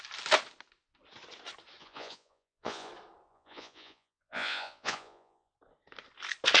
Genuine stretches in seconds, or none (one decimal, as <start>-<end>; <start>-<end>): 0.0-1.8; 2.9-3.3; 5.5-6.6